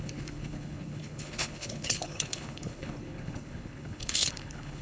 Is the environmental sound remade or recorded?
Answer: remade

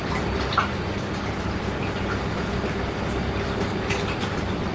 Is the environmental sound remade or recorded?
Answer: recorded